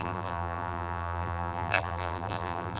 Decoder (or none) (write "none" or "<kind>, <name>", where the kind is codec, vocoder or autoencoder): vocoder, BigVGAN v2